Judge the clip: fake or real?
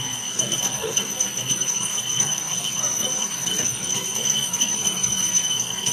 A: fake